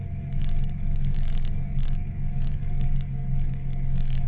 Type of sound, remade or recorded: remade